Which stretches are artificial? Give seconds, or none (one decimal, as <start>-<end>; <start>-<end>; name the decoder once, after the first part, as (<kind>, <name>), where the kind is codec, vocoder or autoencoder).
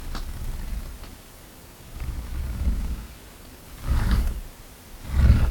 1.1-4.4 (codec, DAC)